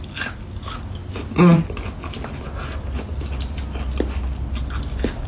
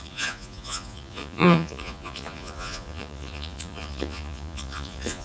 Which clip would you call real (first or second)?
first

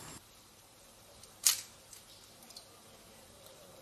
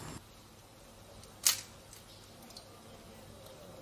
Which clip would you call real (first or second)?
second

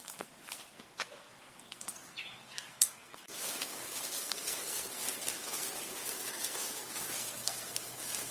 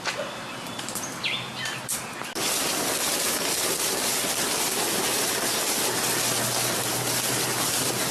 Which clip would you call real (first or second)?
second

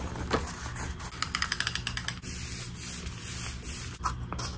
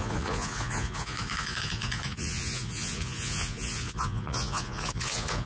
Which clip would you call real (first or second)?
first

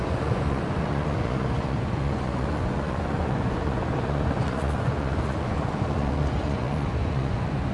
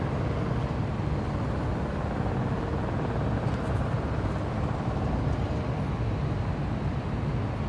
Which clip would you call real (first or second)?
second